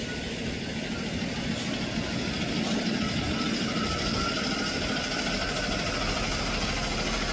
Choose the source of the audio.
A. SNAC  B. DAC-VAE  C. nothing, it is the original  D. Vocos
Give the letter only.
C